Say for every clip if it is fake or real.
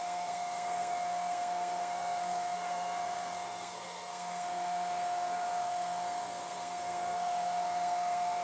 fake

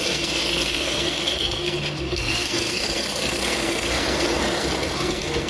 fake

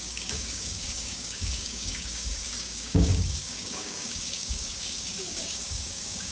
fake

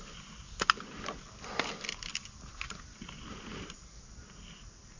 real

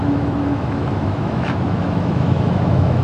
fake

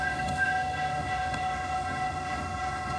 fake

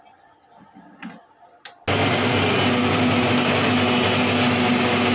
real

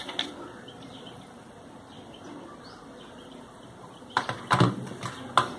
fake